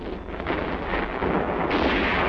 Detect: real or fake fake